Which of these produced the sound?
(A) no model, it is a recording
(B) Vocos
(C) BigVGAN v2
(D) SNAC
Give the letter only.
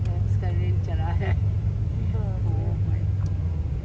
A